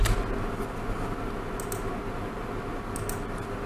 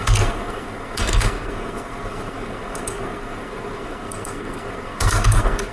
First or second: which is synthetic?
second